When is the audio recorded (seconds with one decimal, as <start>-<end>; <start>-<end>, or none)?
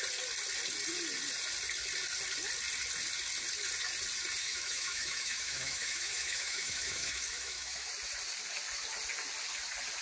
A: 0.0-4.4; 7.9-10.0